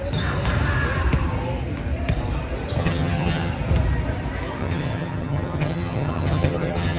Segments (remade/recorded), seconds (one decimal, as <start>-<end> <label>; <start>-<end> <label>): 0.0-2.8 recorded; 2.8-3.5 remade; 3.5-4.6 recorded; 4.6-7.0 remade